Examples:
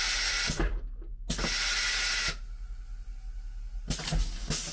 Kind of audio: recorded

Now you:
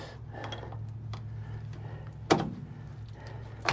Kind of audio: recorded